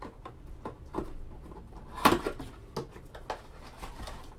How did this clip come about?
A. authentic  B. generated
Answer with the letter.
A